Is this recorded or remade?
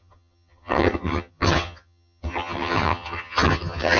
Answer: remade